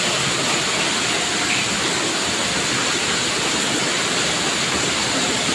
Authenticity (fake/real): real